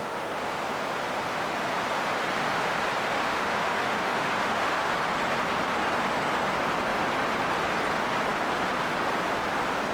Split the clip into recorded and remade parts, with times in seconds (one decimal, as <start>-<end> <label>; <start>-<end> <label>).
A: 0.0-0.6 remade; 0.6-3.1 recorded; 3.1-4.9 remade; 4.9-9.9 recorded